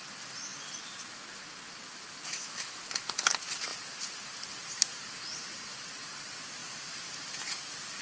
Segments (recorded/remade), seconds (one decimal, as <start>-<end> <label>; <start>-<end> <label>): 0.0-2.3 recorded; 2.3-3.3 remade; 3.3-8.0 recorded